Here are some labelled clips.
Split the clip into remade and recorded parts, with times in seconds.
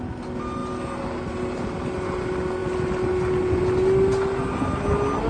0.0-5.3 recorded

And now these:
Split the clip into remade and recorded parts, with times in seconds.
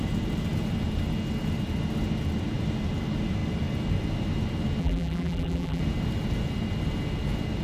0.0-4.8 recorded; 4.8-5.8 remade; 5.8-7.6 recorded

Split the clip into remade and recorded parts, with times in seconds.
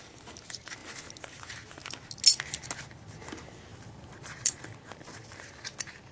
0.0-3.7 recorded; 3.7-5.4 remade; 5.4-6.1 recorded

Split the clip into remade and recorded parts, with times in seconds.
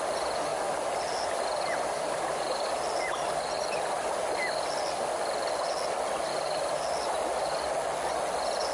0.0-0.5 recorded; 0.5-4.1 remade; 4.1-8.7 recorded